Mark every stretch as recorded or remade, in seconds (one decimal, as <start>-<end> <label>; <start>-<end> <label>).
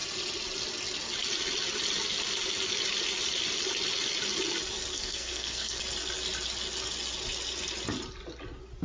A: 0.0-4.9 recorded; 4.9-5.8 remade; 5.8-8.8 recorded